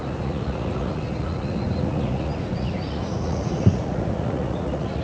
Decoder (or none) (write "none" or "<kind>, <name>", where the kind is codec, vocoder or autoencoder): vocoder, Vocos